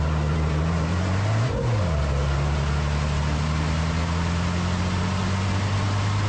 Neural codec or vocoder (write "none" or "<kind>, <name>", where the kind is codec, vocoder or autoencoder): none